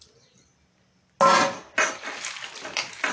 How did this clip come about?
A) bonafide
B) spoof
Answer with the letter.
A